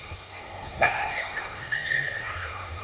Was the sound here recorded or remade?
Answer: remade